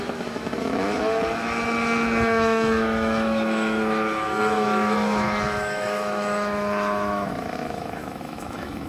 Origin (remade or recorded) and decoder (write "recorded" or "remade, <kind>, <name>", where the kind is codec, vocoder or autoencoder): remade, autoencoder, DAC-VAE